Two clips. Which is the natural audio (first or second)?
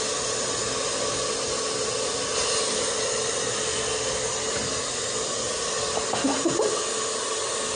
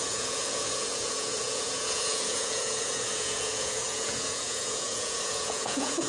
first